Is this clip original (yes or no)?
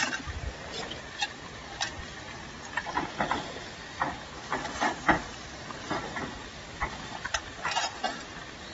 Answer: yes